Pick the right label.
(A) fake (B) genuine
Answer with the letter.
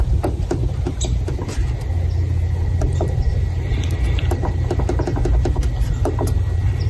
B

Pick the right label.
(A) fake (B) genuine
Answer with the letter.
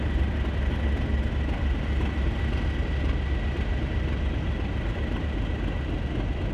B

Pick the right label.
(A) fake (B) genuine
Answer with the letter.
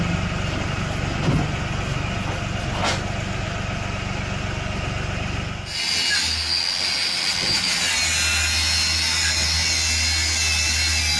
B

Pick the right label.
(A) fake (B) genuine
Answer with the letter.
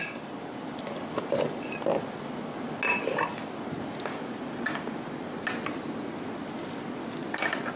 B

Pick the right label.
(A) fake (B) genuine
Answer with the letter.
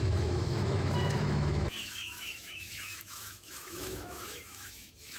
A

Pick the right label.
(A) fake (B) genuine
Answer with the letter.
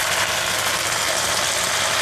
B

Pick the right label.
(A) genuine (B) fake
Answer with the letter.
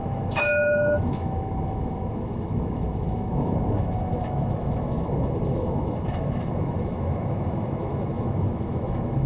B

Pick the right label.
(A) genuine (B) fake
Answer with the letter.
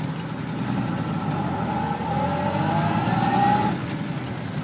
A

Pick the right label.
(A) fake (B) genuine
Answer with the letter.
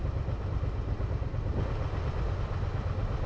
B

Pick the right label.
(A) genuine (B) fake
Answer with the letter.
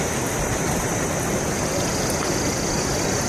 A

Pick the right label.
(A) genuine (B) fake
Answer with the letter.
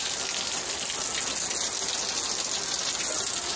A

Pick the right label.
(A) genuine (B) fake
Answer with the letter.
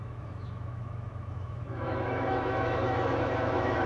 B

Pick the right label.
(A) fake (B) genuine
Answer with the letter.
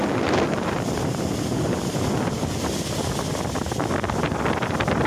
B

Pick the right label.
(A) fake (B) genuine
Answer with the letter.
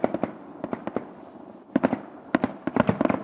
B